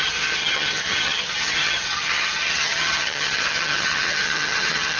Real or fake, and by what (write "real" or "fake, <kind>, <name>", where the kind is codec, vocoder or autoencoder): fake, vocoder, HiFi-GAN